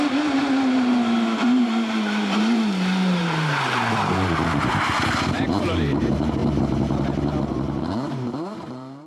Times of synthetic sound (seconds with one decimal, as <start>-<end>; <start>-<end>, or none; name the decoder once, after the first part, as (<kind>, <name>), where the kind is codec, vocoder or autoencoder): 0.0-0.9 (vocoder, BigVGAN v2); 1.4-6.4; 7.8-9.1